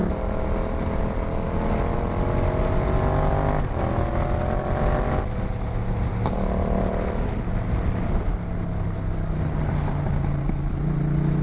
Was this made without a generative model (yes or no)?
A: yes